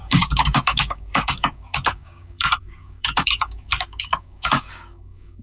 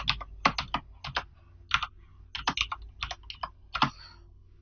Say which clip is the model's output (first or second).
first